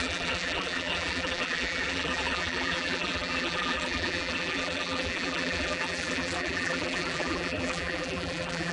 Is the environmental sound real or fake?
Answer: fake